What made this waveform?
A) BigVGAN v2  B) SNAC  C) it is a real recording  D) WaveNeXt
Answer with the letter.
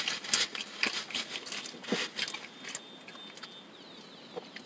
C